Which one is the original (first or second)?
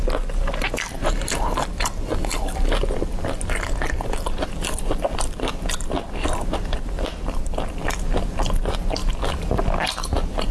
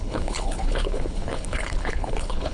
first